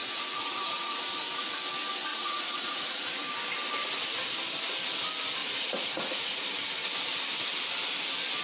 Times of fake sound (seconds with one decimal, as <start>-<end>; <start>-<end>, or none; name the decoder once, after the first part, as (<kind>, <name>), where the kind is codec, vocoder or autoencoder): 0.0-1.0 (vocoder, Vocos); 2.1-3.1; 5.4-6.4